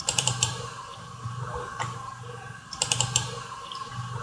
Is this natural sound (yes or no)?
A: no